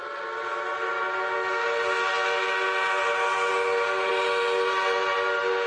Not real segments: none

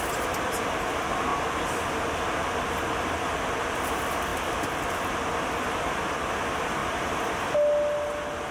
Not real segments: none

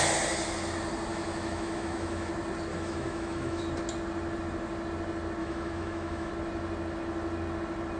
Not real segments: 1.1-2.3 (autoencoder, DAC-VAE); 2.7-3.6; 5.4-6.3